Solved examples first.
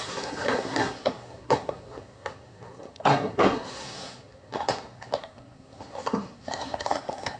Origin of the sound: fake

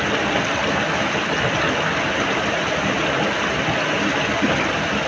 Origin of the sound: real